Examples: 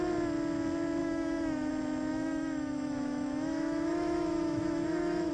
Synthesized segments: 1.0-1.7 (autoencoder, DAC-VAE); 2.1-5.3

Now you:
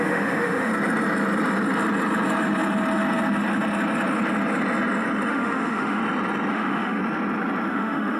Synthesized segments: 0.0-0.7 (autoencoder, DAC-VAE); 5.3-6.0; 6.5-7.0; 7.7-8.2